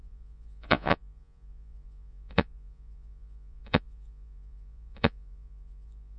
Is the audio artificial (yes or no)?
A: yes